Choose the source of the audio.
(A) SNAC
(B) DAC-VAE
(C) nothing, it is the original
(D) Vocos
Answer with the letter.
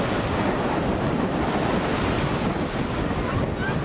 C